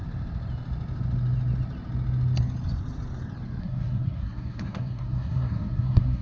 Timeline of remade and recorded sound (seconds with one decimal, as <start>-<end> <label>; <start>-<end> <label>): 0.0-3.6 recorded; 3.6-6.2 remade